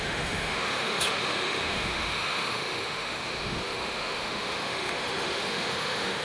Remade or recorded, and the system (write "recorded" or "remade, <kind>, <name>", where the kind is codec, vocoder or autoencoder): remade, autoencoder, DAC-VAE